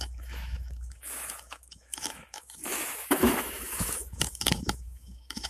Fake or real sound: fake